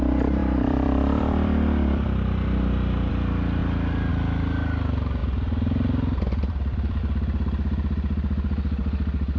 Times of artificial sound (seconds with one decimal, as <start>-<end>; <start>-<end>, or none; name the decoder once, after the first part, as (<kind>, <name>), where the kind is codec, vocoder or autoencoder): 0.4-3.1 (vocoder, BigVGAN v2); 3.6-4.1; 5.2-7.0